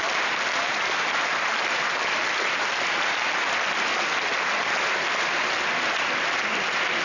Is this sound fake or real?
real